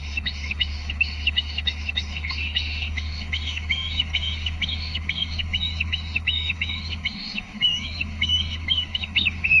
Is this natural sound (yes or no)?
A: no